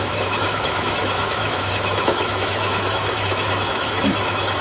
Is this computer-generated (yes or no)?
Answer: yes